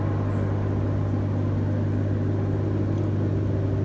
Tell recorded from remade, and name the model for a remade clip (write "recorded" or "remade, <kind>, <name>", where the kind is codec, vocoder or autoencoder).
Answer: recorded